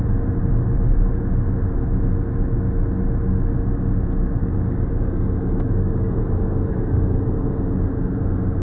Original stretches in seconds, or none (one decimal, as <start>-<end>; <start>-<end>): 0.0-4.4; 7.2-8.6